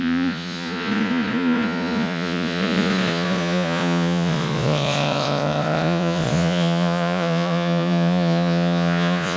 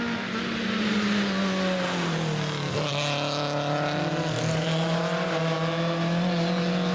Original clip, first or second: second